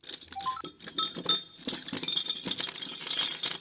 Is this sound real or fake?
real